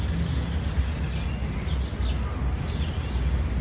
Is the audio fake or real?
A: real